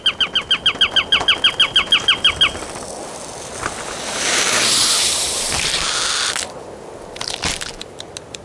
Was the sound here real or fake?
real